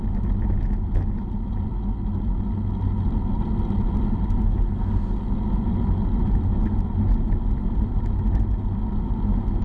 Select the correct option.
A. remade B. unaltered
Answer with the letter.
B